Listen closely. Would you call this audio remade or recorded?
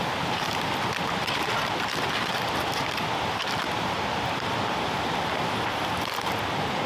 recorded